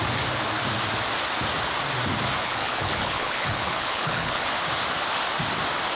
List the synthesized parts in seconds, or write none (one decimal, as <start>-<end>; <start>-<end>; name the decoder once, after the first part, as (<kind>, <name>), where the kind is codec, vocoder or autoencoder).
2.4-4.5 (codec, HILCodec)